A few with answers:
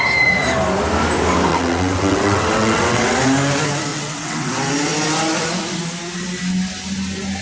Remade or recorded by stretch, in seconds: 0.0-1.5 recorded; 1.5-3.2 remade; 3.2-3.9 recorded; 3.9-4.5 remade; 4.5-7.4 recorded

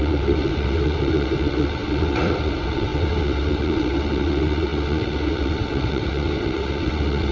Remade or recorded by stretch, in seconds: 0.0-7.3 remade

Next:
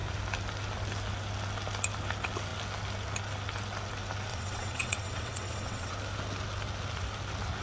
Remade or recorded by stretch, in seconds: 0.0-4.3 recorded; 4.3-5.9 remade; 5.9-7.6 recorded

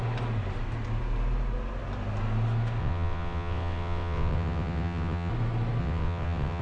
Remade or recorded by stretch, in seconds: 0.0-2.8 recorded; 2.8-5.3 remade; 5.3-5.8 recorded; 5.8-6.6 remade